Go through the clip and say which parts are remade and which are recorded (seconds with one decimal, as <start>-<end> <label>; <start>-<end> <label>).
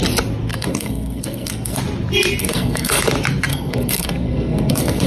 0.0-0.5 recorded; 0.5-1.8 remade; 1.8-2.4 recorded; 2.4-3.0 remade; 3.0-3.5 recorded; 3.5-5.1 remade